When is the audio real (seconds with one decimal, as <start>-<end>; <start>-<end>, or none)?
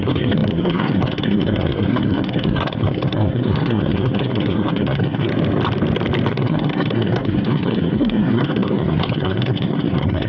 5.3-6.3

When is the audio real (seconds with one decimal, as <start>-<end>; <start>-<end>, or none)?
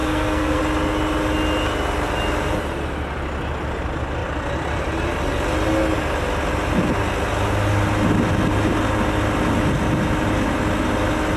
0.6-11.4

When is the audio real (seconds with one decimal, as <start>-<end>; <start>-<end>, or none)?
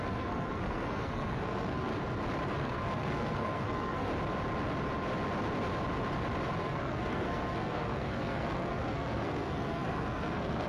1.9-2.5; 4.1-6.6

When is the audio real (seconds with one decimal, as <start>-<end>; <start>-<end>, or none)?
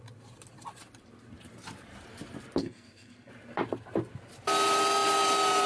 0.0-2.6; 3.3-5.7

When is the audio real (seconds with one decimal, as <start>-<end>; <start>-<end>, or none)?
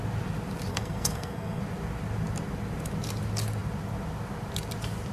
0.0-0.7; 1.6-5.1